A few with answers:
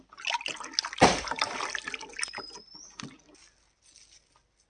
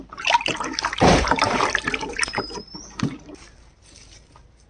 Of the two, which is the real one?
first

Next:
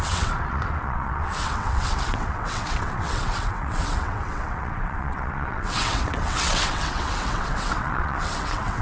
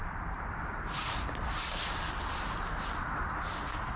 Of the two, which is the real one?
second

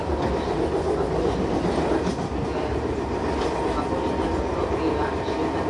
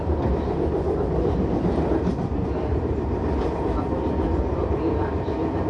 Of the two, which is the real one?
first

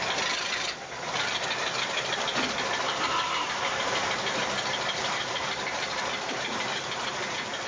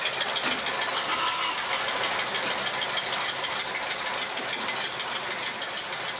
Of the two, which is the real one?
second